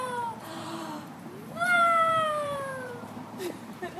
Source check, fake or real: fake